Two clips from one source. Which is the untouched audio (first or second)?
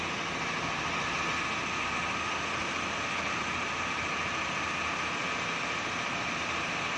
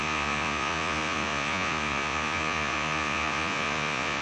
first